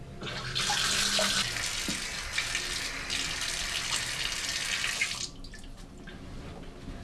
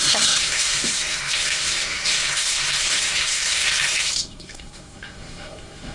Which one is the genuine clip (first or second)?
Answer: first